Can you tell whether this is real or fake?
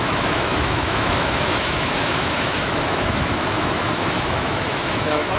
fake